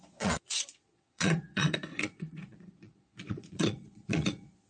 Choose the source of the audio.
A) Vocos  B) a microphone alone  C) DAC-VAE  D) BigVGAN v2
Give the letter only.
A